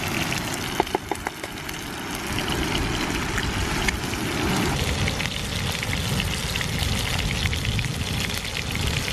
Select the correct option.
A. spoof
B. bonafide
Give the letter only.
B